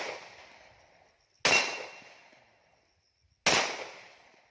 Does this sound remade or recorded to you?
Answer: recorded